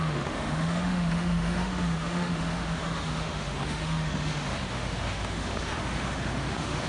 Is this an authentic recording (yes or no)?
no